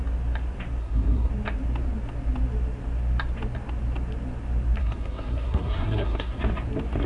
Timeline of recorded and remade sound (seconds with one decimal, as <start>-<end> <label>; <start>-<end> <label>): 0.0-0.8 recorded; 0.8-1.3 remade; 1.3-4.8 recorded; 4.8-6.4 remade; 6.4-7.1 recorded